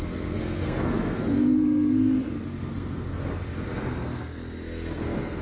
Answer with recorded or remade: remade